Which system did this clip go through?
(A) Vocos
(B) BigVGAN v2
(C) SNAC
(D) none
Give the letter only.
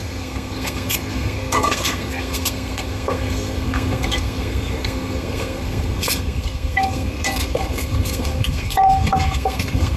C